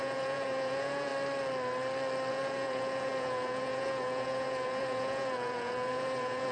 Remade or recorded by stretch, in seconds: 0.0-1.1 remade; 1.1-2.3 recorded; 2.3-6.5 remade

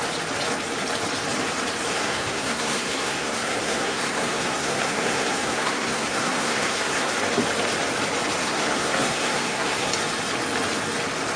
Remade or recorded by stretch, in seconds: 0.0-1.9 recorded; 1.9-7.1 remade; 7.1-8.4 recorded; 8.4-9.9 remade; 9.9-11.4 recorded

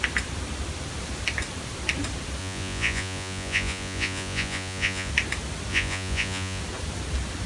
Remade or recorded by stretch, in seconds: 0.0-2.4 recorded; 2.4-5.1 remade; 5.1-5.7 recorded; 5.7-6.6 remade; 6.6-7.5 recorded

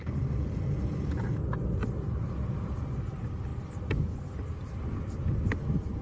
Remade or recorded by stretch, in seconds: 0.0-6.0 recorded